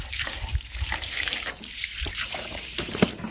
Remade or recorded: remade